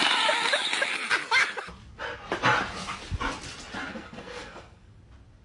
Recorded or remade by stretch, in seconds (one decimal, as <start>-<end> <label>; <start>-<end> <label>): 0.0-3.9 recorded; 3.9-4.9 remade; 4.9-5.4 recorded